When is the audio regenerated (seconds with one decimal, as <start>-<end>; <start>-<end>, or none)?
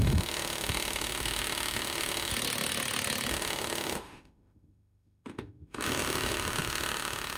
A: 0.0-2.3; 3.3-7.4